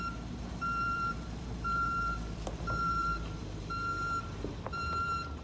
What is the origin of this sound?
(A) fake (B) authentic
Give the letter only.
A